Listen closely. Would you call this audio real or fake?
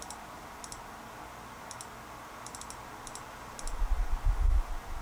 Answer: real